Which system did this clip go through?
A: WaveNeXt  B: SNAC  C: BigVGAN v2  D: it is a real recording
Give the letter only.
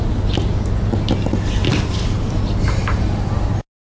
D